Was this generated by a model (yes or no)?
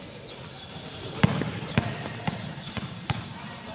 no